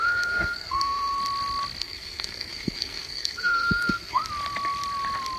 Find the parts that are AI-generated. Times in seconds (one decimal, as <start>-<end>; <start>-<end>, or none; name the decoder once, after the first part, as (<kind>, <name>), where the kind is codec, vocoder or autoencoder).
0.0-1.2 (codec, SNAC); 1.8-4.2